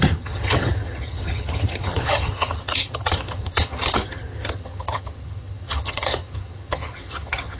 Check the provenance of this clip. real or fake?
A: fake